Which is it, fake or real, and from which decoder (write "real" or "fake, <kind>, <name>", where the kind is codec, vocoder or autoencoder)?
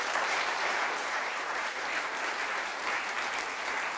fake, vocoder, BigVGAN v2